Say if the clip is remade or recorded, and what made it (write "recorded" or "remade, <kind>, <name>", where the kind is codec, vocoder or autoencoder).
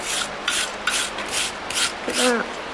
recorded